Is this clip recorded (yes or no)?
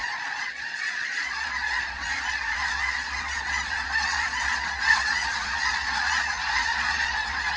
no